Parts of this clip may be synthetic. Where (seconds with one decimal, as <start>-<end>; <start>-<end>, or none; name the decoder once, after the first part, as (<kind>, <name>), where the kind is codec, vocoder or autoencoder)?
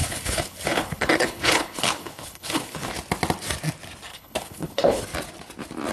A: 0.0-2.9 (codec, HILCodec); 4.1-5.0